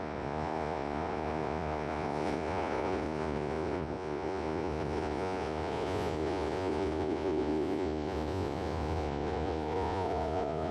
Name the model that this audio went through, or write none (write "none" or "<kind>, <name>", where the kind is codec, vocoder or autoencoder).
vocoder, Vocos